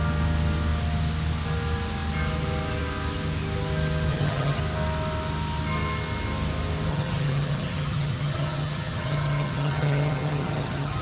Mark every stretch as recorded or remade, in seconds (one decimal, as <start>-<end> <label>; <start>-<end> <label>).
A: 0.0-4.1 recorded; 4.1-4.6 remade; 4.6-6.9 recorded; 6.9-11.0 remade